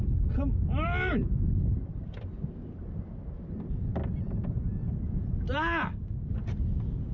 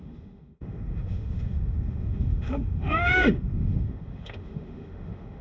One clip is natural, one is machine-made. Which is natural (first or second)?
first